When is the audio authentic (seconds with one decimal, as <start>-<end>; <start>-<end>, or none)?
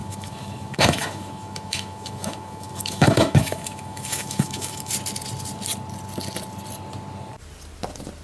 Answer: 4.9-8.2